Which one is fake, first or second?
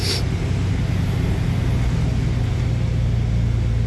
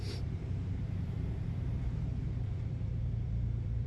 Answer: second